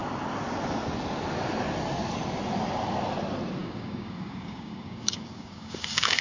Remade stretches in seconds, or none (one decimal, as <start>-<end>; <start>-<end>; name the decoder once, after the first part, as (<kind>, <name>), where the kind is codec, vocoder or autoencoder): 3.6-6.2 (codec, DAC)